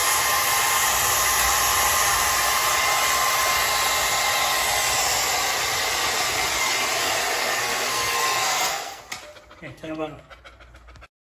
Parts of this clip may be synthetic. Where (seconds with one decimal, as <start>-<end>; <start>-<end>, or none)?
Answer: 7.4-9.0; 9.7-10.3